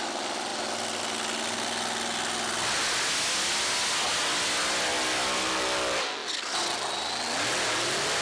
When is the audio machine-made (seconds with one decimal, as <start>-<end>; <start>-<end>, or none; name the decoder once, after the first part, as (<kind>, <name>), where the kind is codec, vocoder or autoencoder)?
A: none